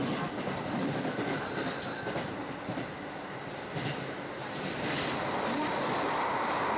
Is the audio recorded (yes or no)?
yes